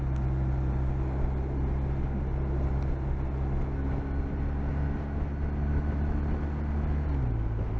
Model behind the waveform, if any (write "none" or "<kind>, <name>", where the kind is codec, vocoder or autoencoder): none